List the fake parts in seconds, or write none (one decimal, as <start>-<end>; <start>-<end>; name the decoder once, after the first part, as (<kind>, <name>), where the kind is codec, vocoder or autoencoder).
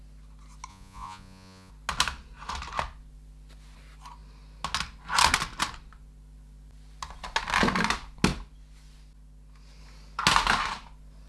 0.7-1.7 (vocoder, Vocos)